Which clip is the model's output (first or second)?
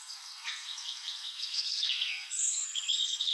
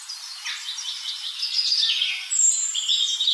first